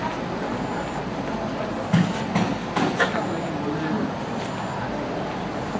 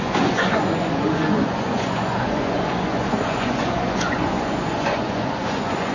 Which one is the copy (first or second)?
second